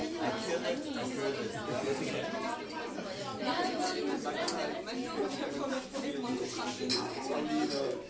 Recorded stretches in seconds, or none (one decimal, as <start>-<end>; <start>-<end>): 0.0-8.1